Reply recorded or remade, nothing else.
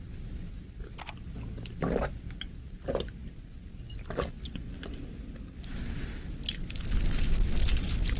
recorded